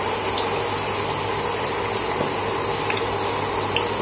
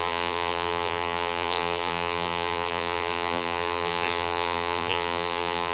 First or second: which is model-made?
second